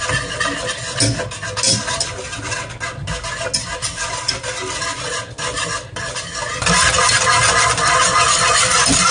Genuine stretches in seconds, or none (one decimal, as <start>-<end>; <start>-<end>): 0.0-9.1